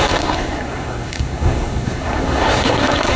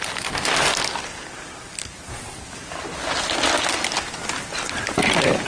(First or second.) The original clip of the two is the second